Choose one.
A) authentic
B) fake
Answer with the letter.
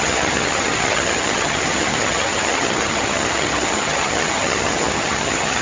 B